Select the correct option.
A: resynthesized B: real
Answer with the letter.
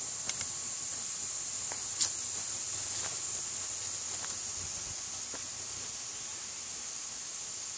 B